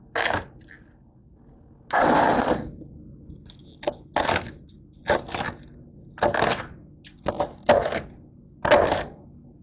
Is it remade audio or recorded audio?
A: recorded